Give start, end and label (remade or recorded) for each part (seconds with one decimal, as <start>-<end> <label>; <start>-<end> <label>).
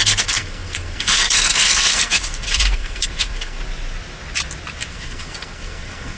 0.0-3.6 remade; 3.6-4.9 recorded; 4.9-6.2 remade